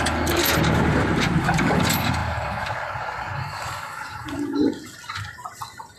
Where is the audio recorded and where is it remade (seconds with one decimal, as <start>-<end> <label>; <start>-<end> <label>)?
0.0-0.4 remade; 0.4-1.4 recorded; 1.4-4.6 remade; 4.6-6.0 recorded